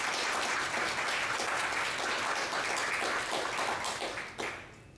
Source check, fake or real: real